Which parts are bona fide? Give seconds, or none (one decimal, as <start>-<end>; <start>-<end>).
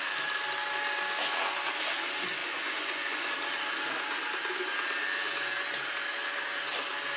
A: 0.0-2.4; 3.3-7.2